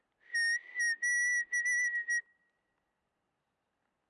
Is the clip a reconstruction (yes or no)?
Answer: no